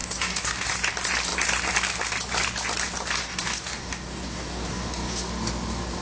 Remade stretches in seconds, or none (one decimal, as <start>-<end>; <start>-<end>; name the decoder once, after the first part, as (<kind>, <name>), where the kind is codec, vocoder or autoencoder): 0.0-0.7 (codec, DAC); 3.2-5.2